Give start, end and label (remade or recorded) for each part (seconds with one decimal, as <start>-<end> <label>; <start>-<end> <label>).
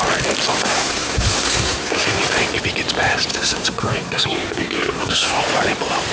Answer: 0.0-0.6 recorded; 0.6-2.2 remade; 2.2-3.3 recorded; 3.3-5.4 remade; 5.4-6.1 recorded